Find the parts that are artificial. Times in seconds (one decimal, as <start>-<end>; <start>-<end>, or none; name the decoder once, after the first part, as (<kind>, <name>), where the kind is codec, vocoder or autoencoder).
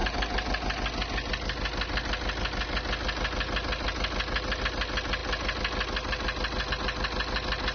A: none